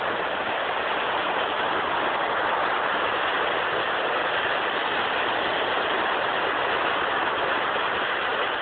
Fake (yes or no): no